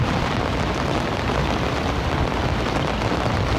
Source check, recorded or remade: recorded